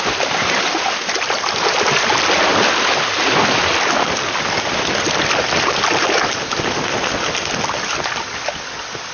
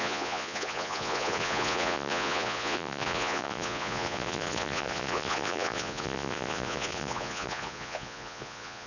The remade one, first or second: second